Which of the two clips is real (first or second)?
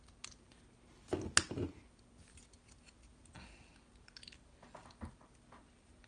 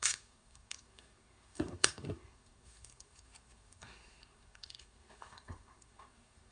first